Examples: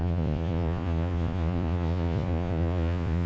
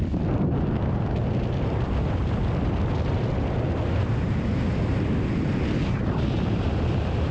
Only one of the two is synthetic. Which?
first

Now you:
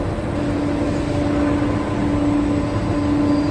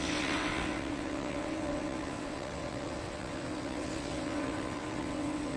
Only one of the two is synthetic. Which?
second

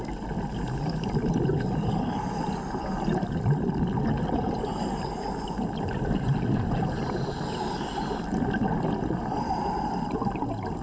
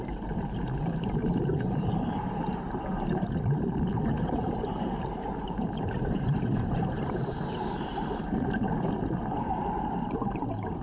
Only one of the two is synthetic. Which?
second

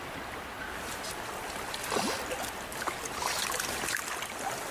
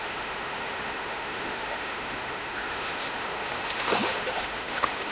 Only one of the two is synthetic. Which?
second